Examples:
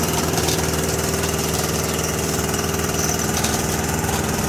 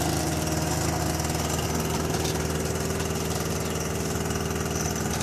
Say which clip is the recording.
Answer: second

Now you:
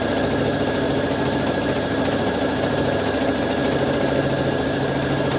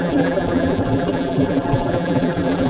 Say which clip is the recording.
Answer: first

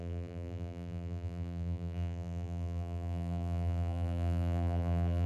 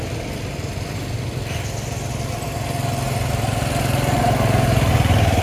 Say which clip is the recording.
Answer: second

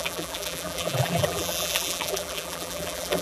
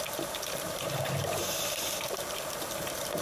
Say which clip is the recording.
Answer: second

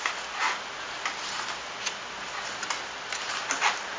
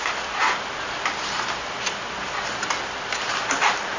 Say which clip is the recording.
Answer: first